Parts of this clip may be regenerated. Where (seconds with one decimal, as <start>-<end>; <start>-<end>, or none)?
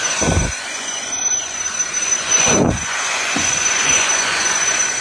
0.0-5.0